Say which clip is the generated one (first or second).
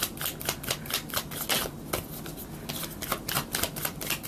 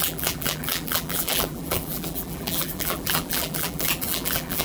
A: second